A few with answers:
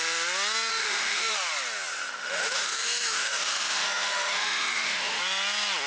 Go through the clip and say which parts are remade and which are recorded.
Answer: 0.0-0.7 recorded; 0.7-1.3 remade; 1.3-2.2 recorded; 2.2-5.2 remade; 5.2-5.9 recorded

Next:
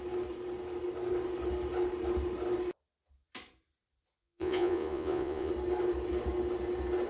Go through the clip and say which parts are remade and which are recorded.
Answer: 0.0-4.2 recorded; 4.2-5.5 remade; 5.5-7.1 recorded

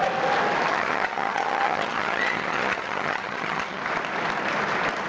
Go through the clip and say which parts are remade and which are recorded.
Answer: 0.0-0.7 recorded; 0.7-3.8 remade; 3.8-5.1 recorded

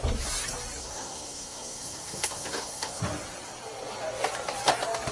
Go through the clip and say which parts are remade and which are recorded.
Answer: 0.0-0.8 recorded; 0.8-3.0 remade; 3.0-5.1 recorded

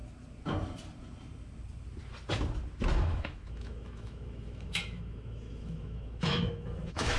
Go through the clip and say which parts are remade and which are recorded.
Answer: 0.0-2.9 recorded; 2.9-7.2 remade

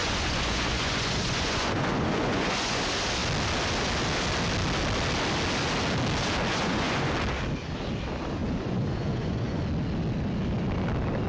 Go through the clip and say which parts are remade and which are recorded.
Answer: 0.0-2.8 remade; 2.8-6.5 recorded; 6.5-7.1 remade; 7.1-8.4 recorded; 8.4-9.6 remade; 9.6-11.3 recorded

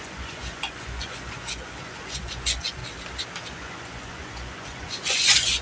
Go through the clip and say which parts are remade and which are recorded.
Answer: 0.0-2.8 remade; 2.8-3.5 recorded; 3.5-5.6 remade